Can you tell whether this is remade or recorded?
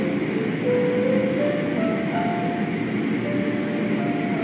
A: recorded